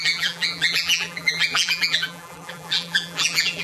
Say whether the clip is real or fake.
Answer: fake